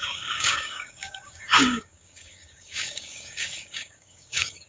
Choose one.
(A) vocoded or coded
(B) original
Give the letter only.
A